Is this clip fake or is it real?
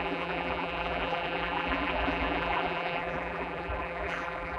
fake